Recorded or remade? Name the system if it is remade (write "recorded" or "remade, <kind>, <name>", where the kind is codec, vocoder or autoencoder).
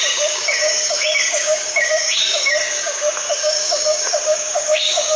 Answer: remade, codec, DAC